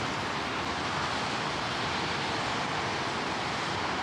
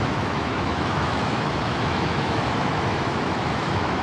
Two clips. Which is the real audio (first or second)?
first